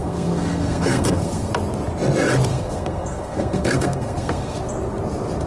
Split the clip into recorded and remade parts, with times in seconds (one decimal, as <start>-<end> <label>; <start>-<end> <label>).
0.0-1.5 remade; 1.5-2.5 recorded; 2.5-4.6 remade; 4.6-5.5 recorded